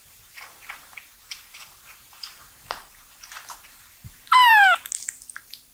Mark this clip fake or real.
fake